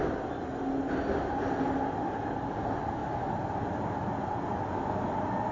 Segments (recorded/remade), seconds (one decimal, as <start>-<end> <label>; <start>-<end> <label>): 0.0-5.5 recorded